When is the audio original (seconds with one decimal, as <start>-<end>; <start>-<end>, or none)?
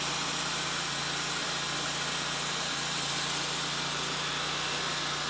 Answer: 0.0-5.3